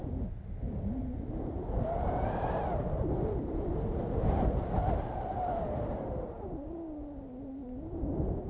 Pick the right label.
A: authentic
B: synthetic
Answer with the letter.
A